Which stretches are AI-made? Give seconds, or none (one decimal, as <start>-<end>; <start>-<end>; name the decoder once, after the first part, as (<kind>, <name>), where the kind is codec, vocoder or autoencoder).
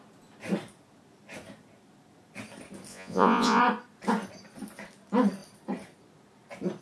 2.9-3.6 (vocoder, Vocos)